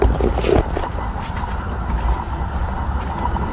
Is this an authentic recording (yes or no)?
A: yes